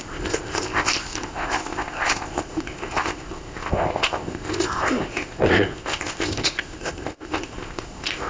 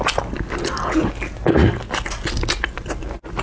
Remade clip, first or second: first